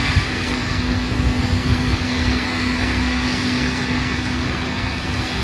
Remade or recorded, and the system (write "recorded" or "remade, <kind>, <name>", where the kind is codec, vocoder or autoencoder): remade, codec, SNAC